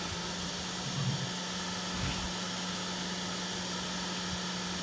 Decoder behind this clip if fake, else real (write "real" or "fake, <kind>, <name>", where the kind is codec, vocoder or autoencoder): real